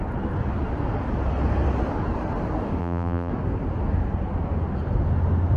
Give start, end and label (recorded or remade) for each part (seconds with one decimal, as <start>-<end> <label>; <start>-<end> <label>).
0.0-2.8 recorded; 2.8-3.3 remade; 3.3-5.6 recorded